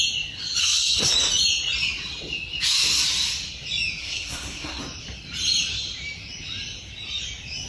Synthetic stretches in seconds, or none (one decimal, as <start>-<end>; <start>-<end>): 0.6-1.1; 4.0-4.8